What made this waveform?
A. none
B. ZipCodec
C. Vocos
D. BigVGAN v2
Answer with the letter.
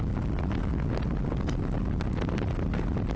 A